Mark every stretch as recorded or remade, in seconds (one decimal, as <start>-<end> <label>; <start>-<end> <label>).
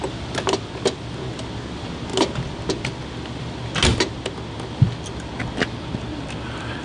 0.0-6.8 recorded